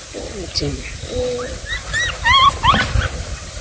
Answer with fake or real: real